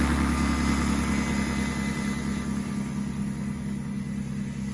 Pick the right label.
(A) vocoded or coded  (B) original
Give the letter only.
B